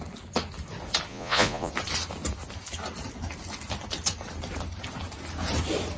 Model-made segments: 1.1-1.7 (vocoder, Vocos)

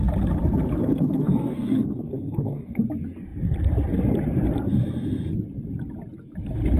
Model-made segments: 0.8-2.9 (codec, SNAC)

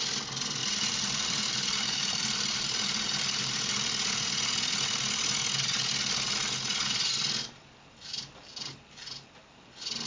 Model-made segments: 0.6-4.1 (vocoder, BigVGAN v2)

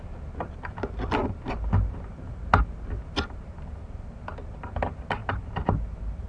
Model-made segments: none

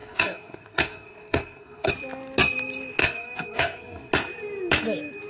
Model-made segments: 0.0-1.9 (codec, SNAC); 3.0-4.1

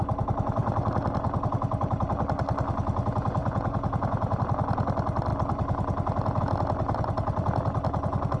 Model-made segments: 3.4-4.4 (vocoder, Vocos)

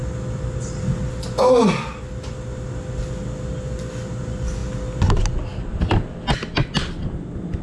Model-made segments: 6.6-7.6 (vocoder, BigVGAN v2)